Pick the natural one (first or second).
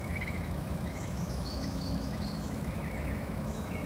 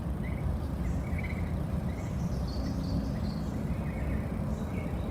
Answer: second